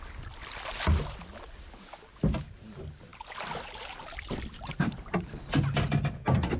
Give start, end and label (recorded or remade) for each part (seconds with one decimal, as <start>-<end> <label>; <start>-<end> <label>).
0.0-6.6 recorded